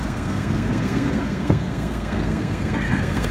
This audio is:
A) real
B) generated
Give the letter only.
B